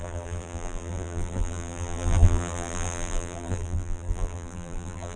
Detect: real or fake fake